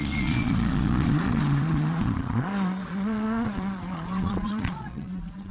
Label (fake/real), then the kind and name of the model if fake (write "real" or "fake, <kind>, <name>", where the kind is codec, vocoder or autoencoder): fake, vocoder, Vocos